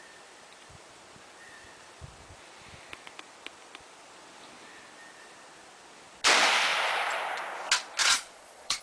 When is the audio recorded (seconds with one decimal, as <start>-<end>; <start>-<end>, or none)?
0.0-8.0